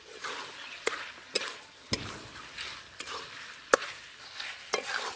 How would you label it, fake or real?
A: real